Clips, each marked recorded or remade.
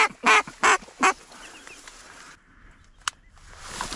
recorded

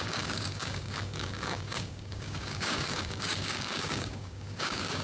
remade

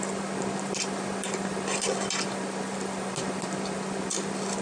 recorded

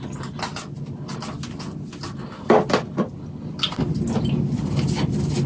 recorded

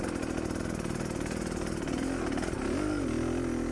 recorded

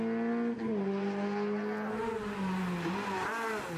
recorded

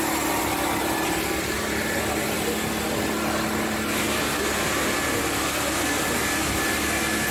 recorded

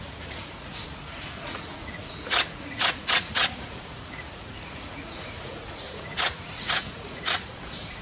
remade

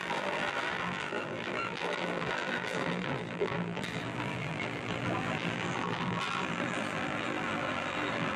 remade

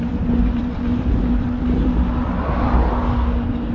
recorded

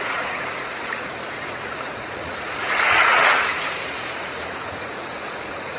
remade